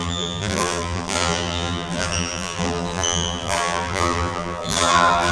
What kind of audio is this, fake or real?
fake